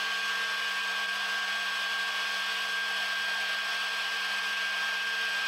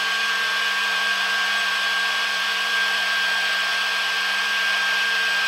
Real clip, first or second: first